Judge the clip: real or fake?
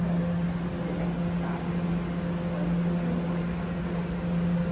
real